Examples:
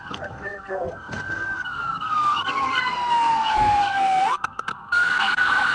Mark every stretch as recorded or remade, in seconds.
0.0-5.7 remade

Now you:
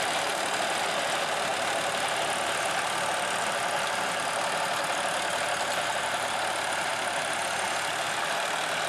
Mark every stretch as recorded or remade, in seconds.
0.0-8.9 recorded

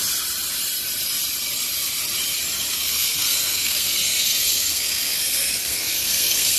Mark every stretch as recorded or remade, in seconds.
0.0-2.7 recorded; 2.7-6.6 remade